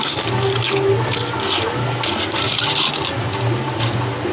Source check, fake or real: real